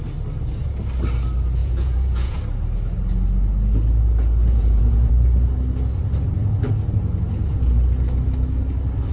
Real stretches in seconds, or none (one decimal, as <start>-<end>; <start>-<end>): 0.0-1.6; 2.4-4.4; 5.1-9.1